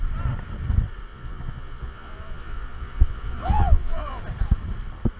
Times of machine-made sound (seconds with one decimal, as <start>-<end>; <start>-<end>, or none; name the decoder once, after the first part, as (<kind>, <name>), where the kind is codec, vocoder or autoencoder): 1.1-4.2 (vocoder, Vocos)